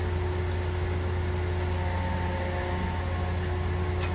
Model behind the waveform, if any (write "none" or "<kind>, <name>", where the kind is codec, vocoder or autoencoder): none